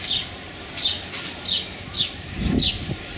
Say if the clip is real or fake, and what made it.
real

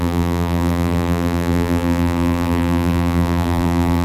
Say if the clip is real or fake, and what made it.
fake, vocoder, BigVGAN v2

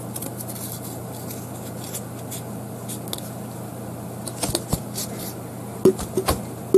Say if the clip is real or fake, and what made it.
real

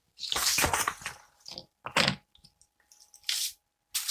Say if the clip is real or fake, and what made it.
fake, vocoder, BigVGAN v2